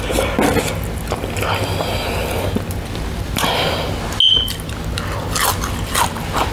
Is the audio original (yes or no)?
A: yes